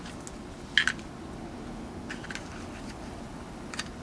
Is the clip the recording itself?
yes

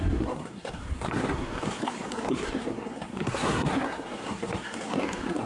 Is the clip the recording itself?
no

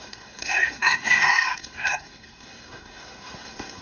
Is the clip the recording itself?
no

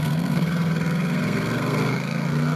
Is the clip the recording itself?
no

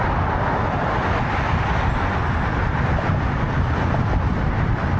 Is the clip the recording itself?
yes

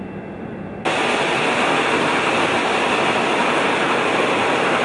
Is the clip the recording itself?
yes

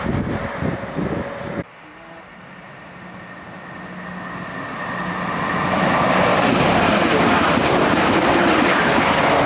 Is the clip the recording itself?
yes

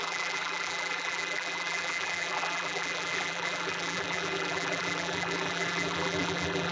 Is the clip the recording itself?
no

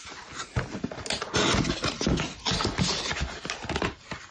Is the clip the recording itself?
yes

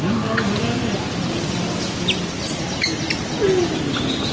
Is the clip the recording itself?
yes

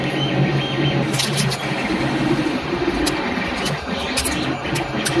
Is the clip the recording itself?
yes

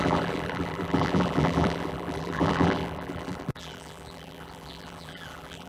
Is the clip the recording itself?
no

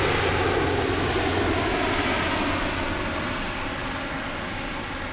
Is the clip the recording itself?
yes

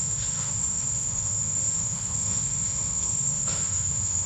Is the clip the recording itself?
no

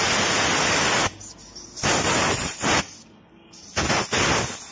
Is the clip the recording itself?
yes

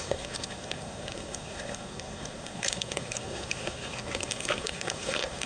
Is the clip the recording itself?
no